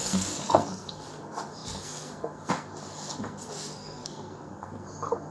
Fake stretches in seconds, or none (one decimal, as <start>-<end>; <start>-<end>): 0.0-5.3